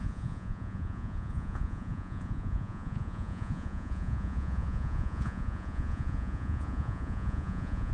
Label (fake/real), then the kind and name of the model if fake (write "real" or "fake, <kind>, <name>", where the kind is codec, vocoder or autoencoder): fake, vocoder, Vocos